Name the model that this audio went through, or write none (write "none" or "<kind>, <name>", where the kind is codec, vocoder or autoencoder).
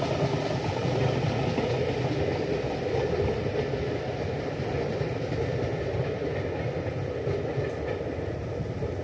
none